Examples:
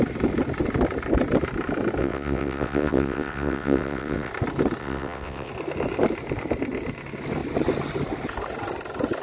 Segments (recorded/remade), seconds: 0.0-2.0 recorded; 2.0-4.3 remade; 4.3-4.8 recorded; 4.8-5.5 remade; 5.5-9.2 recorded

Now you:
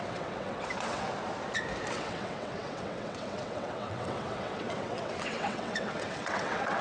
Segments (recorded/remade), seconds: 0.0-1.1 remade; 1.1-1.9 recorded; 1.9-6.8 remade

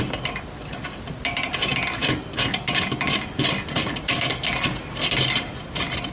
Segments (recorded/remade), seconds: 0.0-6.1 recorded

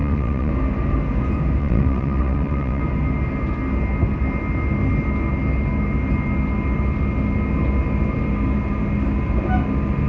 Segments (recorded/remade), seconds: 0.0-0.5 remade; 0.5-1.6 recorded; 1.6-2.8 remade; 2.8-10.1 recorded

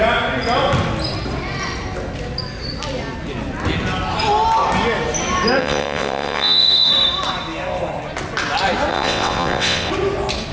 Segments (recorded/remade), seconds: 0.0-5.6 recorded; 5.6-6.9 remade; 6.9-8.9 recorded; 8.9-9.9 remade; 9.9-10.5 recorded

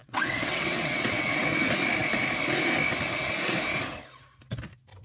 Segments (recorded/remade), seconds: 0.0-1.4 remade; 1.4-5.0 recorded

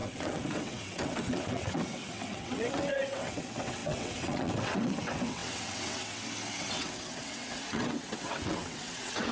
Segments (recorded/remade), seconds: 0.0-9.3 remade